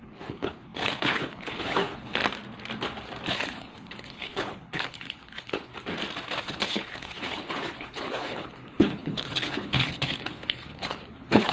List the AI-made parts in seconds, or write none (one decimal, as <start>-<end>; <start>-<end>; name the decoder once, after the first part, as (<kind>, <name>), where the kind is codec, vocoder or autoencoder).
0.0-2.2 (codec, HILCodec); 3.3-5.7; 6.4-11.5